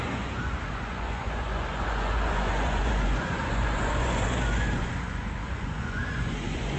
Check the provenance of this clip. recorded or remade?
remade